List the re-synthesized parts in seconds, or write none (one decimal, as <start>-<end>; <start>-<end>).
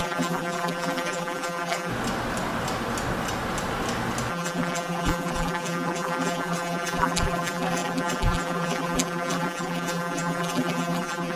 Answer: 0.0-1.9; 4.3-11.4